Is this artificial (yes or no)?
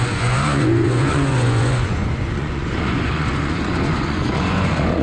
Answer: yes